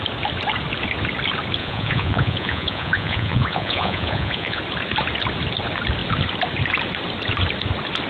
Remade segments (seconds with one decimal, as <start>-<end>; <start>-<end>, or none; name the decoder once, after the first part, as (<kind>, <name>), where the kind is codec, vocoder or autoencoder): 1.6-4.6 (vocoder, Vocos)